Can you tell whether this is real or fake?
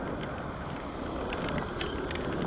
real